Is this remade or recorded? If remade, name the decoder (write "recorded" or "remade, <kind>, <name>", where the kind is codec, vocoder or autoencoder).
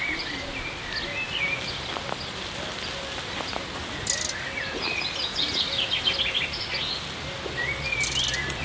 recorded